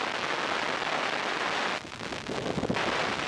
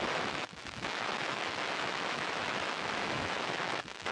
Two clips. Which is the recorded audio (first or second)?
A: first